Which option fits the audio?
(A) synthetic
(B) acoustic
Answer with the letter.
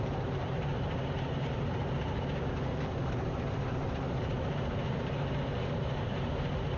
A